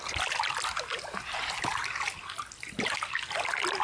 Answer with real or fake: real